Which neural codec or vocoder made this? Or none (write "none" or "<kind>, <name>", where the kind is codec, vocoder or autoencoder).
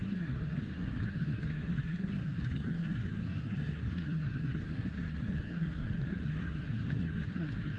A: codec, SNAC